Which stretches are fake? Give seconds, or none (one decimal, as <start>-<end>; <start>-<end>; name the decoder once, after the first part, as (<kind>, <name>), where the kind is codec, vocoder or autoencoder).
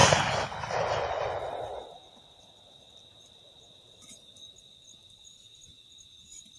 none